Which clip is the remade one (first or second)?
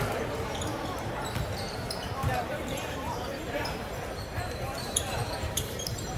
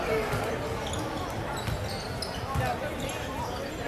first